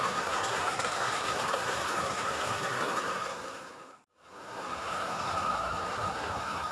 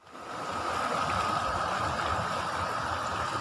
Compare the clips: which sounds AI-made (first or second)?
first